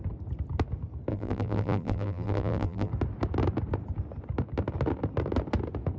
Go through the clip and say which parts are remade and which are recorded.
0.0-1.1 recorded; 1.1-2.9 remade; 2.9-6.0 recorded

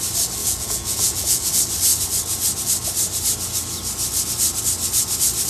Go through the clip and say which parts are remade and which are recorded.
0.0-0.4 recorded; 0.4-1.5 remade; 1.5-5.5 recorded